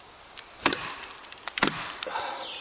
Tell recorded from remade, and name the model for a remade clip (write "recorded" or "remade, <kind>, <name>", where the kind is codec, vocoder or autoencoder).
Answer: recorded